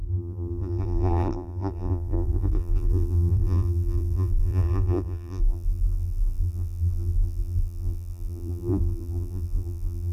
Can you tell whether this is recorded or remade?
remade